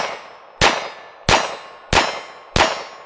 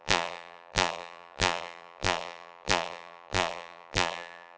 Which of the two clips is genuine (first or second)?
first